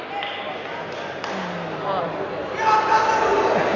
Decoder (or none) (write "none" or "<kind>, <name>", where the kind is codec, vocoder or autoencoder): none